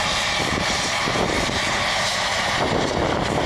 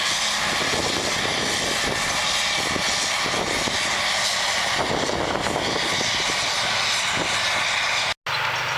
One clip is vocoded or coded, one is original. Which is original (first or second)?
second